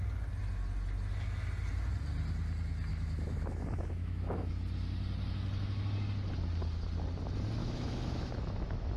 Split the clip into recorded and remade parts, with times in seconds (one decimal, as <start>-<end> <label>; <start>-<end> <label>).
0.0-2.9 recorded; 2.9-4.5 remade; 4.5-7.6 recorded; 7.6-9.0 remade